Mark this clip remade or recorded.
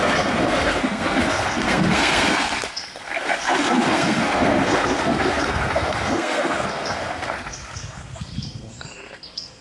remade